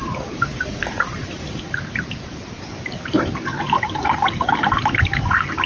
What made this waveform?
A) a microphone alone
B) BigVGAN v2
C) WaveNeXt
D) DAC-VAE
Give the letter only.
B